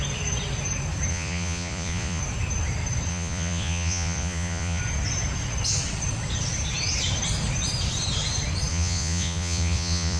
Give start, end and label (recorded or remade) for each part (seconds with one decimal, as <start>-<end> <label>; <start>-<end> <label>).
0.0-1.1 recorded; 1.1-2.2 remade; 2.2-3.1 recorded; 3.1-4.8 remade; 4.8-8.7 recorded; 8.7-10.2 remade